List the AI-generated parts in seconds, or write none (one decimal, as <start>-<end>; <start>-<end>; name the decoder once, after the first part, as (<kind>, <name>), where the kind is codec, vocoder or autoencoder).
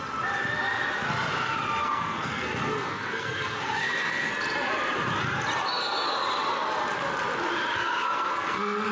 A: 1.8-4.3 (codec, SNAC); 7.7-8.9